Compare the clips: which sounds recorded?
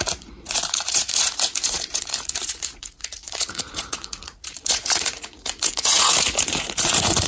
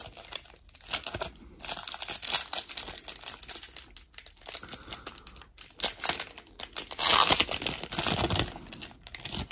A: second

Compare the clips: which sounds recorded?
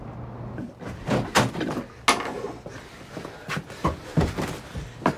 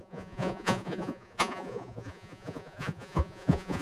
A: first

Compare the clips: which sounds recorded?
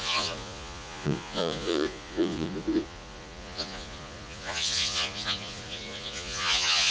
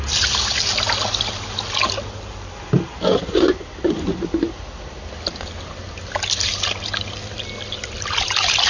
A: second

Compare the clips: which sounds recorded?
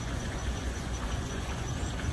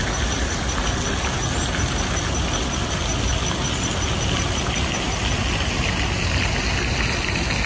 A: second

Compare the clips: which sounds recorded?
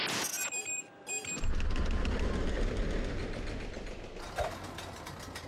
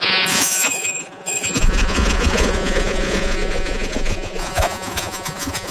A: first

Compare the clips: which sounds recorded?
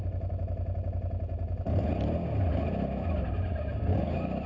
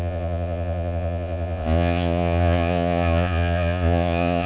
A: first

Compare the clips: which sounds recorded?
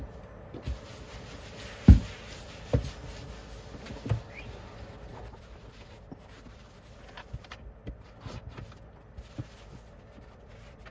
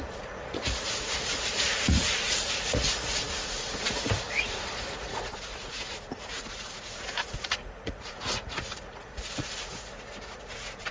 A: first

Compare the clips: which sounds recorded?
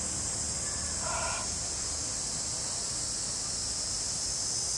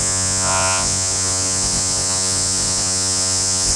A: first